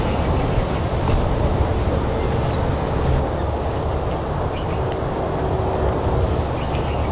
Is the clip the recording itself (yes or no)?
yes